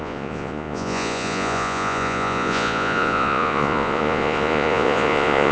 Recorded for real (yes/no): no